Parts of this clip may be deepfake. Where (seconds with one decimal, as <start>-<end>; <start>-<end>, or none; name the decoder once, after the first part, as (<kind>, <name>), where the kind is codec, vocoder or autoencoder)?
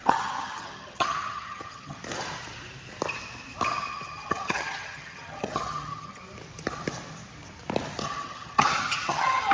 0.0-2.0 (vocoder, HiFi-GAN); 3.9-6.2; 8.0-9.5